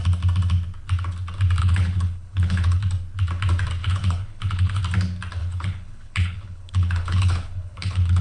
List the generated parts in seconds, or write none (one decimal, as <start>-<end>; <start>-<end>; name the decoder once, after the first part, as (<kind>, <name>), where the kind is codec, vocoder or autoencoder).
1.6-2.8 (codec, HILCodec); 3.8-4.8; 5.4-8.2